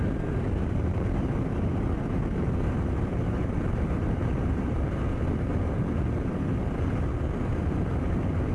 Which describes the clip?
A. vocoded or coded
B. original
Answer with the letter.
A